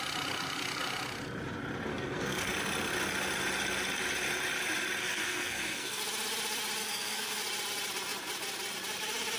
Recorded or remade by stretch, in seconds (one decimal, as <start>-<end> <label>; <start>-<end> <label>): 0.0-1.9 recorded; 1.9-2.5 remade; 2.5-5.0 recorded; 5.0-6.0 remade; 6.0-6.8 recorded; 6.8-7.4 remade; 7.4-9.4 recorded

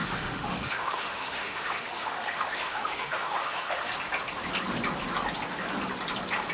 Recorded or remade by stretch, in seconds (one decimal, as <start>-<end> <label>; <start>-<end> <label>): 0.0-3.9 remade; 3.9-6.5 recorded

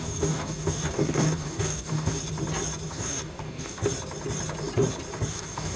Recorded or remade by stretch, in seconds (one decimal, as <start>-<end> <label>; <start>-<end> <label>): 0.0-2.2 remade; 2.2-2.9 recorded; 2.9-3.8 remade; 3.8-5.3 recorded; 5.3-5.8 remade

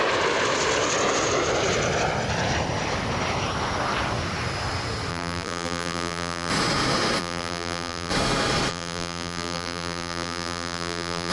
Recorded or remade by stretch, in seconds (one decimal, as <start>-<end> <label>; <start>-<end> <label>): 0.0-5.1 recorded; 5.1-6.5 remade; 6.5-7.2 recorded; 7.2-8.1 remade; 8.1-8.7 recorded; 8.7-11.3 remade

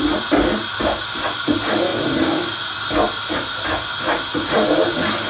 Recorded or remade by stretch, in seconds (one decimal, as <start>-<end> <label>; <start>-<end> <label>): 0.0-5.3 recorded

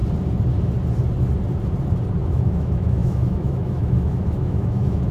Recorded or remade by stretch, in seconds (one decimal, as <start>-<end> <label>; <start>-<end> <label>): 0.0-2.2 recorded; 2.2-5.1 remade

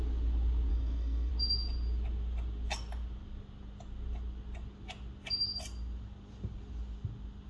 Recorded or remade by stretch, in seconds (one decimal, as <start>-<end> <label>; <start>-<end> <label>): 0.0-0.7 recorded; 0.7-1.3 remade; 1.3-7.5 recorded